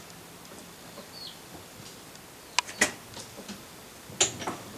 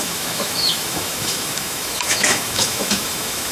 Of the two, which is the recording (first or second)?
first